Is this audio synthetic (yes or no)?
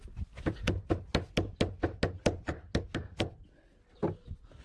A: no